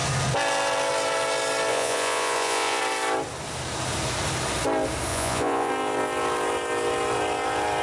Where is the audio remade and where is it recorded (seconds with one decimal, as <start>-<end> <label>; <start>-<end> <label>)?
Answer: 0.0-1.7 recorded; 1.7-2.8 remade; 2.8-5.1 recorded; 5.1-5.7 remade; 5.7-7.8 recorded

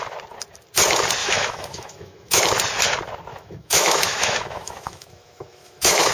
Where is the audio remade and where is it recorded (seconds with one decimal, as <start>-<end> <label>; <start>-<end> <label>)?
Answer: 0.0-1.2 recorded; 1.2-2.4 remade; 2.4-3.3 recorded; 3.3-6.1 remade

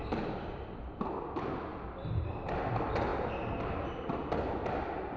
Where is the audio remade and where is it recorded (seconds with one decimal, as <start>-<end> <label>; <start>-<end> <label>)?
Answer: 0.0-5.2 recorded

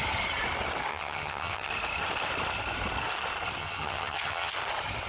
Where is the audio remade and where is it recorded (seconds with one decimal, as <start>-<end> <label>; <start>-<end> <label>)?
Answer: 0.0-0.9 recorded; 0.9-1.7 remade; 1.7-3.6 recorded; 3.6-4.5 remade; 4.5-5.1 recorded

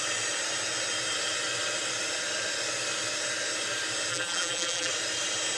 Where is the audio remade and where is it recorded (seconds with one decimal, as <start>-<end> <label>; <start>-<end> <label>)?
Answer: 0.0-4.1 recorded; 4.1-4.9 remade; 4.9-5.6 recorded

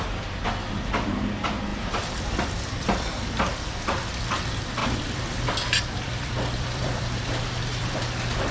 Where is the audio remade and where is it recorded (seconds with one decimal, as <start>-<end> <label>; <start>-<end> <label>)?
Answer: 0.0-1.7 recorded; 1.7-4.2 remade; 4.2-4.8 recorded; 4.8-8.0 remade; 8.0-8.5 recorded

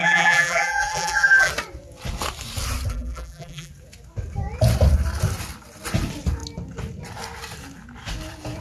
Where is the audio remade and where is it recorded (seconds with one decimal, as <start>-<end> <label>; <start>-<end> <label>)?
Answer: 0.0-1.5 remade; 1.5-2.9 recorded; 2.9-3.7 remade; 3.7-8.6 recorded

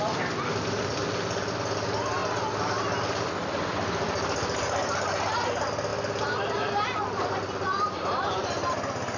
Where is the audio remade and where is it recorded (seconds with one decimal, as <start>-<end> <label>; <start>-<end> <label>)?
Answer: 0.0-9.2 recorded